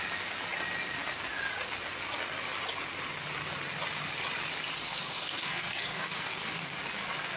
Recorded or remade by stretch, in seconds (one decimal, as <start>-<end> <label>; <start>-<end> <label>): 0.0-4.8 recorded; 4.8-6.8 remade; 6.8-7.4 recorded